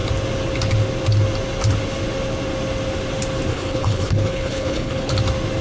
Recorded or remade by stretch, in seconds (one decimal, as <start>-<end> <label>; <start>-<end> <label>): 0.0-3.5 recorded; 3.5-5.1 remade; 5.1-5.6 recorded